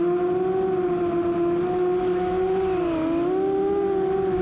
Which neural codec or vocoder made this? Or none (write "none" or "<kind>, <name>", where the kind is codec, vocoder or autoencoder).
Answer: none